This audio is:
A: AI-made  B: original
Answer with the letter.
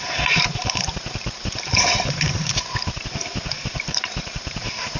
A